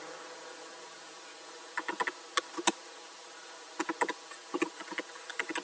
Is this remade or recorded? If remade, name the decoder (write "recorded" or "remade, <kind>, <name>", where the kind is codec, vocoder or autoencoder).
recorded